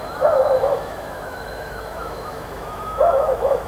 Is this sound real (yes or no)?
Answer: no